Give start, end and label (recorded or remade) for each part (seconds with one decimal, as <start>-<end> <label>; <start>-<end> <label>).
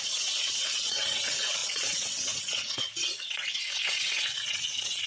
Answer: 0.0-5.1 remade